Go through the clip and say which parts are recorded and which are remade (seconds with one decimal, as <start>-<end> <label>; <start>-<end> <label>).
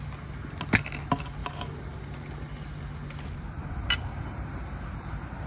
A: 0.0-1.4 recorded; 1.4-2.0 remade; 2.0-4.1 recorded; 4.1-5.1 remade; 5.1-5.5 recorded